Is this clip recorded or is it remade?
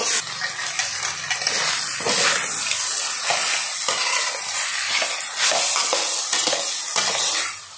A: recorded